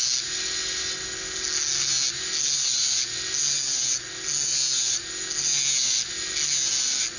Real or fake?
real